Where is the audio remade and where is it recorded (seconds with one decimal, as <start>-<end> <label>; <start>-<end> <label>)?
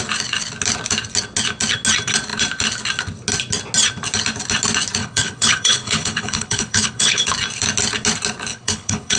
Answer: 0.0-5.0 recorded; 5.0-7.3 remade; 7.3-8.5 recorded; 8.5-9.2 remade